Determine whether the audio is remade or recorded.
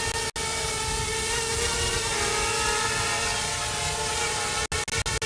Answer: recorded